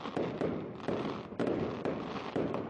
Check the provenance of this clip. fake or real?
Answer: real